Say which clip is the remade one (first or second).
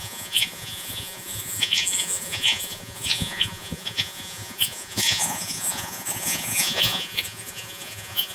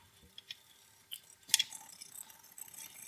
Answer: first